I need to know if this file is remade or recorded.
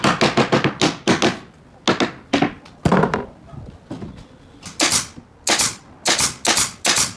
recorded